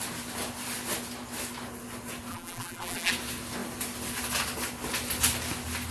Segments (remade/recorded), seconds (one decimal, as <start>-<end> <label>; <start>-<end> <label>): 0.0-2.3 recorded; 2.3-3.1 remade; 3.1-5.9 recorded